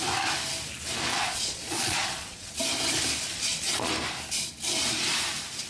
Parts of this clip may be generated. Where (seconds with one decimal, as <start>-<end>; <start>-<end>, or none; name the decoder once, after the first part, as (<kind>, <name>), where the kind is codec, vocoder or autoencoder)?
1.1-2.5 (vocoder, Vocos); 3.3-3.9